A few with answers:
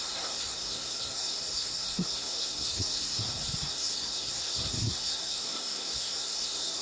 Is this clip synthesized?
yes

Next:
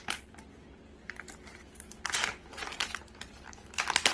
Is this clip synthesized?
no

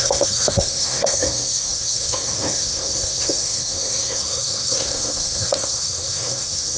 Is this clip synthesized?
yes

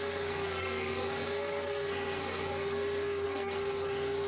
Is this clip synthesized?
yes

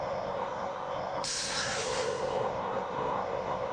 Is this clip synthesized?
yes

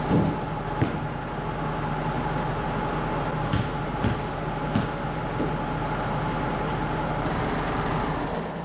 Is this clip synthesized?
no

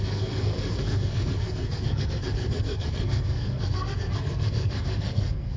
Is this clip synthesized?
yes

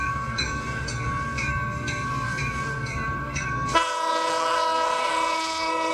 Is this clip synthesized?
yes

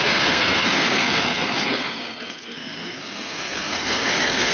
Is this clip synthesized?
yes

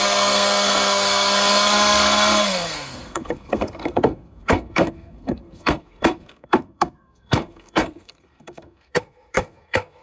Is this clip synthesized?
yes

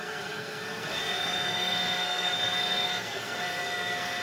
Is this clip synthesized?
yes